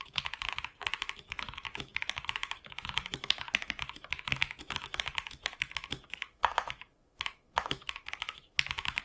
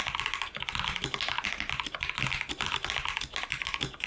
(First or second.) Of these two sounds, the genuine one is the second